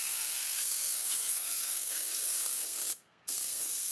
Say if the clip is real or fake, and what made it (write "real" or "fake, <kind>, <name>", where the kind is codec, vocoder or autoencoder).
fake, codec, SNAC